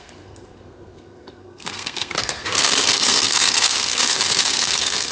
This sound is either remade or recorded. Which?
remade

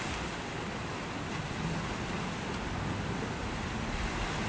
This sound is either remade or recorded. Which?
recorded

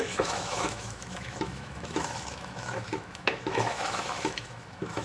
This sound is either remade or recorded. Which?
remade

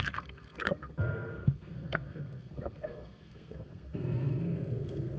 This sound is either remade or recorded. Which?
remade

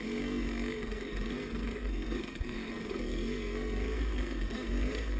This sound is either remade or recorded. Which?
remade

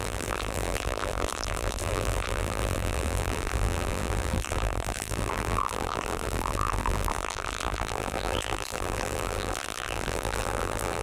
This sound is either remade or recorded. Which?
remade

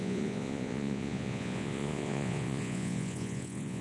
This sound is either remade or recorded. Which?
remade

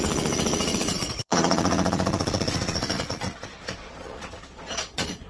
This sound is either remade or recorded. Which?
remade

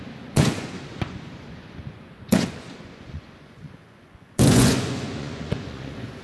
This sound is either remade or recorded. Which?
remade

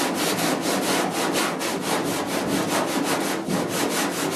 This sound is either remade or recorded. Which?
recorded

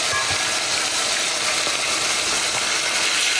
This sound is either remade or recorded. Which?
recorded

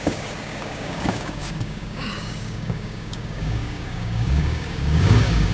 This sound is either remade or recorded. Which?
remade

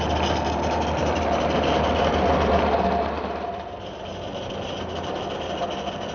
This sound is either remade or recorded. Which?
recorded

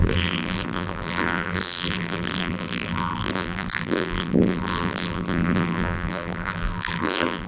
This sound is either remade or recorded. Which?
remade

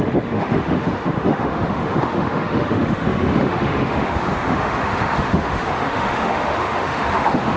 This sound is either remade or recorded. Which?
remade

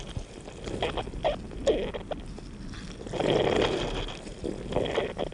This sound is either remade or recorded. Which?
recorded